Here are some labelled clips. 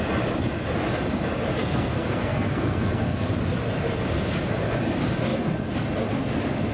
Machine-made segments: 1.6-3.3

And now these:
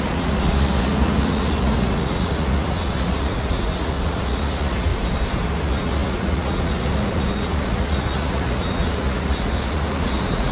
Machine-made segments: 0.0-4.9; 5.5-10.5

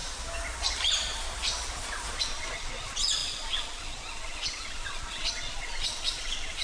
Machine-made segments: 2.2-6.6

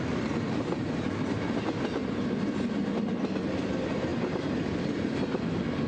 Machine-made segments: 4.1-5.4

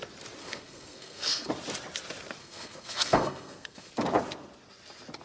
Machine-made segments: 0.4-1.5; 2.4-3.9

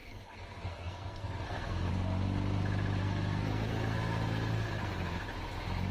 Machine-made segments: 0.0-1.9; 3.0-5.2

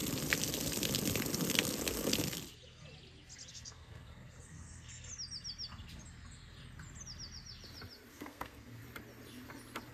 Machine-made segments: 3.5-5.1; 8.1-8.8

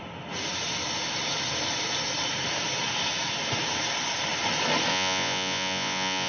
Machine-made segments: 4.9-6.3